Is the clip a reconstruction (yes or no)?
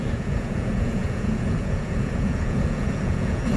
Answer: yes